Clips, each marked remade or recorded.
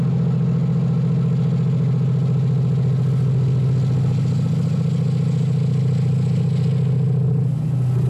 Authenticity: recorded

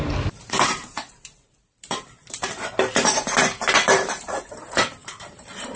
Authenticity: remade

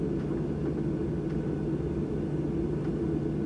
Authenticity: recorded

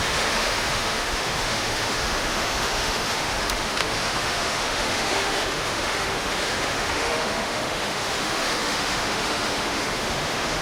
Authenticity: remade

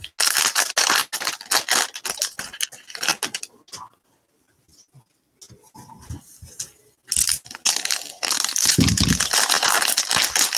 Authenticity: recorded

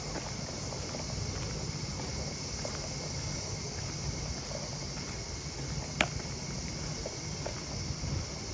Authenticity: recorded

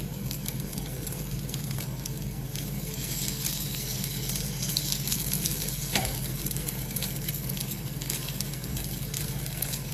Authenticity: remade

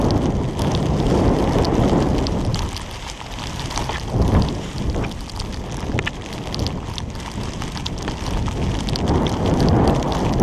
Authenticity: recorded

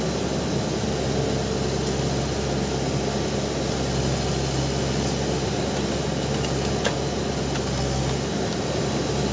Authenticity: recorded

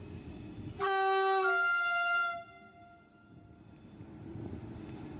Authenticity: recorded